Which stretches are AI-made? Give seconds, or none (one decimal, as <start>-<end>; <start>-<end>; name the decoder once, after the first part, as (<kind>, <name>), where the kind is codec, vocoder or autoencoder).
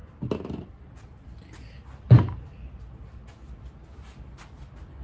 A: none